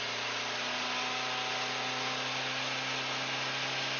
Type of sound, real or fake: real